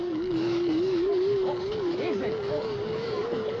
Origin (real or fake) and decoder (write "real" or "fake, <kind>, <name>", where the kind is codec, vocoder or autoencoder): fake, codec, DAC